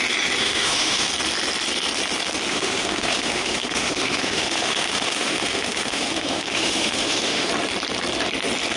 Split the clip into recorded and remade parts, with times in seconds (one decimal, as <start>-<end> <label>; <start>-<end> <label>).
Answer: 0.0-0.4 recorded; 0.4-1.1 remade; 1.1-2.5 recorded; 2.5-7.5 remade; 7.5-8.8 recorded